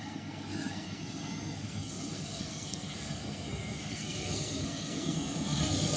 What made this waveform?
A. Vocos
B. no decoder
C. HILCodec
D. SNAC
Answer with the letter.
D